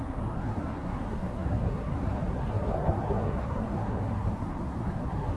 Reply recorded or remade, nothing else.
remade